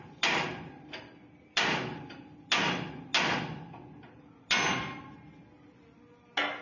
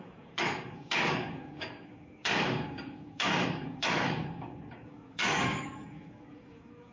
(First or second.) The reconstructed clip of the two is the second